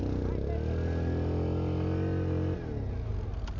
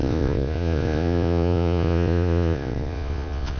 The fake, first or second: second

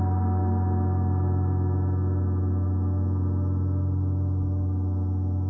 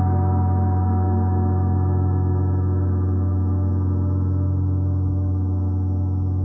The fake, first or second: second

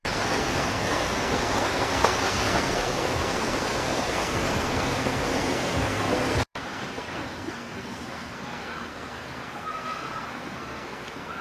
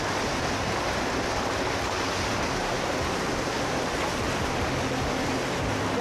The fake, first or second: first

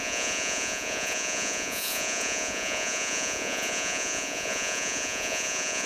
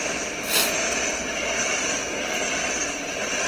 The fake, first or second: first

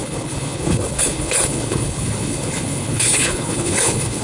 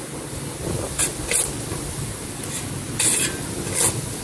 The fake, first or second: first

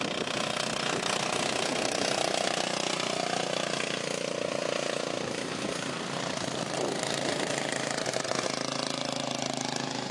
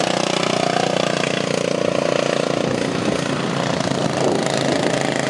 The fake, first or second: first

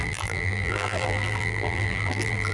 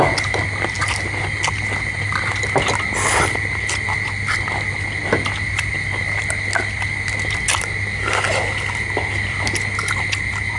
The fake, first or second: first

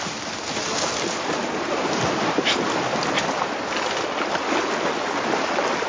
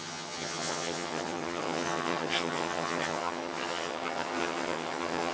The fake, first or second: second